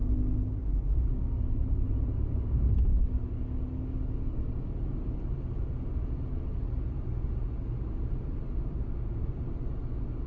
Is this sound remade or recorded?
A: recorded